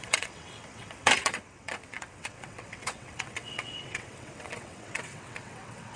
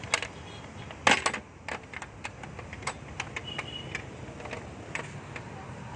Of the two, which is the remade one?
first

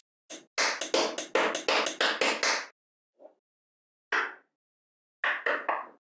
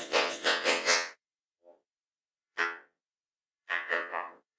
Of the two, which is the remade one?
second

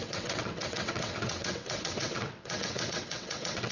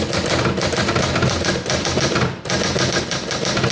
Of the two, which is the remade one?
first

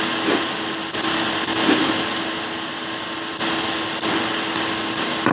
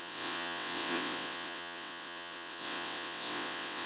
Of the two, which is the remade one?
second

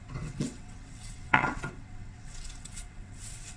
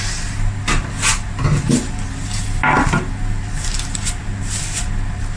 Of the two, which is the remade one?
first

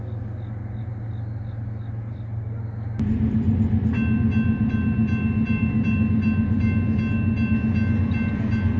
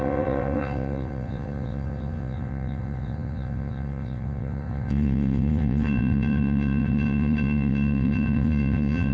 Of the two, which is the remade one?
second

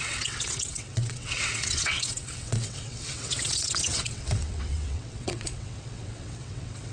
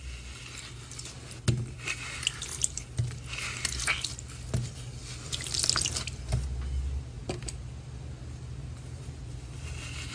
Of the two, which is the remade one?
first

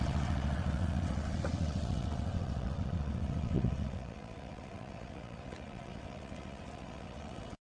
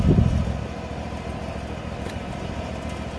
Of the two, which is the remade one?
first